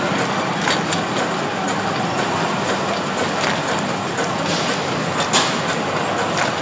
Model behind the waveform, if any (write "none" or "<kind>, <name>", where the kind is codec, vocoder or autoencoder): none